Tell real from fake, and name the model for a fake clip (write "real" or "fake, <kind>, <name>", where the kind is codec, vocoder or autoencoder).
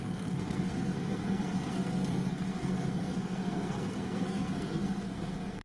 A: fake, codec, SNAC